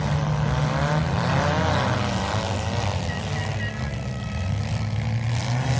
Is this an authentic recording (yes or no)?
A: yes